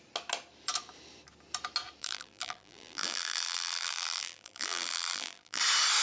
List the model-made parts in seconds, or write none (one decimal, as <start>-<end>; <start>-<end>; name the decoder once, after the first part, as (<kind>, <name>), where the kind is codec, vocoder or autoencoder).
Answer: 2.0-5.6 (vocoder, BigVGAN v2)